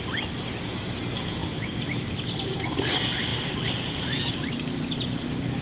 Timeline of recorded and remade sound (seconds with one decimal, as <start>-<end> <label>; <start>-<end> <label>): 0.0-1.4 recorded; 1.4-2.7 remade; 2.7-3.3 recorded; 3.3-4.3 remade; 4.3-5.6 recorded